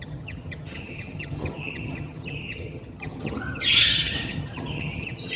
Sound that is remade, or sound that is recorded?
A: remade